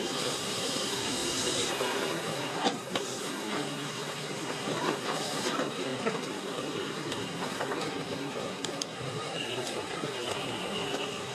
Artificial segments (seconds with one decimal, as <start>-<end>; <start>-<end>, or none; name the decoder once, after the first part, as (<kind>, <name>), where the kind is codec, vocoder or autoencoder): 0.0-11.3 (codec, SNAC)